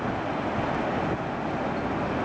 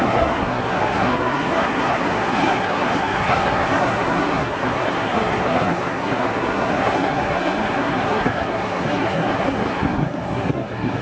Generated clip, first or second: second